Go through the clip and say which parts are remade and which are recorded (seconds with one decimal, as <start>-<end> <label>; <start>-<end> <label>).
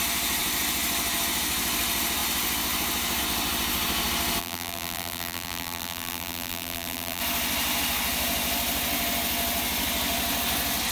0.0-4.4 recorded; 4.4-7.2 remade; 7.2-10.9 recorded